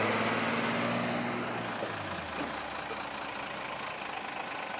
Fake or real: real